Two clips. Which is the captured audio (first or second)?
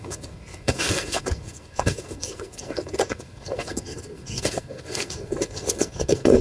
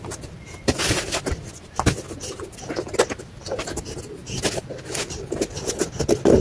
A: second